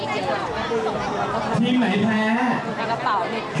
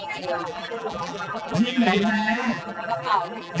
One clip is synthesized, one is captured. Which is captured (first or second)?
first